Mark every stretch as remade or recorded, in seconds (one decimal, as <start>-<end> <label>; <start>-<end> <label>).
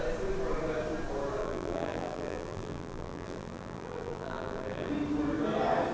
0.0-1.4 recorded; 1.4-4.9 remade; 4.9-5.9 recorded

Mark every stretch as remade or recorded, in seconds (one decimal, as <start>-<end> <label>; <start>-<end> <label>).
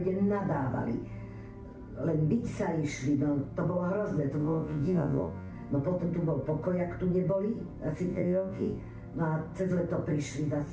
0.0-4.4 recorded; 4.4-5.5 remade; 5.5-8.1 recorded; 8.1-8.8 remade; 8.8-10.7 recorded